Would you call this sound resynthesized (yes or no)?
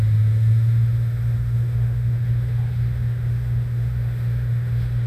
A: yes